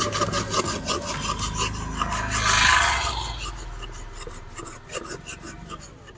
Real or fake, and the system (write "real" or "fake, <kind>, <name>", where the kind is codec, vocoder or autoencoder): real